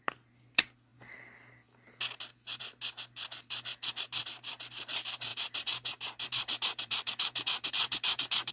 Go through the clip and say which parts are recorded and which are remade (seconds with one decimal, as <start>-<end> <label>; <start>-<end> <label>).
0.0-5.3 recorded; 5.3-8.5 remade